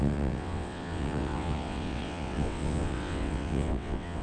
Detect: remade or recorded remade